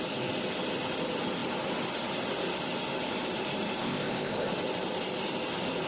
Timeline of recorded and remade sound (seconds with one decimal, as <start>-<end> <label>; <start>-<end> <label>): 0.0-3.8 recorded; 3.8-4.5 remade; 4.5-5.9 recorded